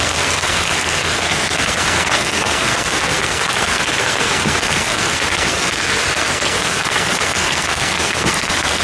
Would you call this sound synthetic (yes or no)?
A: yes